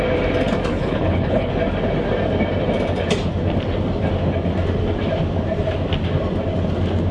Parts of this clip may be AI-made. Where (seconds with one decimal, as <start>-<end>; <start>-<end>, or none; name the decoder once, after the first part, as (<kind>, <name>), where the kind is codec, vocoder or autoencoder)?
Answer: 0.7-1.5 (codec, HILCodec)